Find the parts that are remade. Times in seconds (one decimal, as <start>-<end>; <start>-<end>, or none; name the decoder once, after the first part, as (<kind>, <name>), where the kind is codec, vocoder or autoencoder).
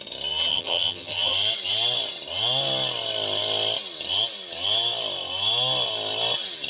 0.5-1.3 (vocoder, HiFi-GAN)